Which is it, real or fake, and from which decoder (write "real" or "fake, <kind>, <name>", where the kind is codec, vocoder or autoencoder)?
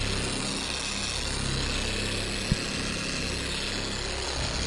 real